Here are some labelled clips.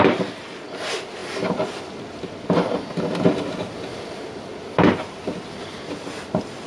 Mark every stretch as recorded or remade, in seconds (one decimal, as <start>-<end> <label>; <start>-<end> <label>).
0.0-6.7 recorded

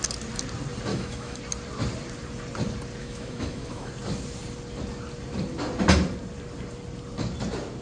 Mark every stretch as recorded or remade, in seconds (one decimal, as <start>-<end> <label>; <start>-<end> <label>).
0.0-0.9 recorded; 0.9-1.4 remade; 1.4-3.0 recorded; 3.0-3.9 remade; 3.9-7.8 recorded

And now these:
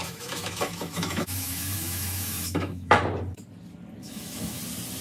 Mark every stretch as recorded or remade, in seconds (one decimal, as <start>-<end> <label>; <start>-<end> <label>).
0.0-3.0 remade; 3.0-4.0 recorded; 4.0-4.6 remade; 4.6-5.0 recorded

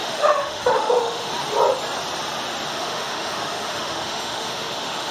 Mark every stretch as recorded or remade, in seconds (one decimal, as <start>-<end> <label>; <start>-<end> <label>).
0.0-1.3 remade; 1.3-2.7 recorded; 2.7-5.1 remade

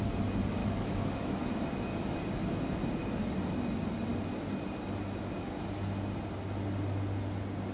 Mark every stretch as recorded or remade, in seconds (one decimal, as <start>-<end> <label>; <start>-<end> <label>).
0.0-0.6 recorded; 0.6-1.4 remade; 1.4-7.7 recorded

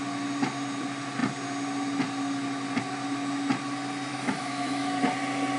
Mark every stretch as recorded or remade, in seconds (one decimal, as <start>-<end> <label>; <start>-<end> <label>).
0.0-4.1 recorded; 4.1-5.0 remade; 5.0-5.6 recorded

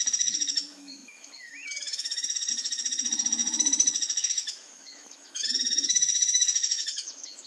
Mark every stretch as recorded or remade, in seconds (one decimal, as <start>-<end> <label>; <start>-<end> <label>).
0.0-7.5 remade

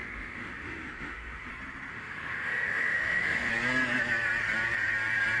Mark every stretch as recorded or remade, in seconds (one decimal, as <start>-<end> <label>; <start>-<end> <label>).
0.0-1.5 remade; 1.5-1.9 recorded; 1.9-3.5 remade; 3.5-5.4 recorded